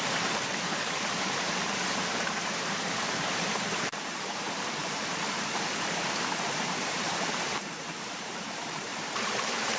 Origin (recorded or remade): remade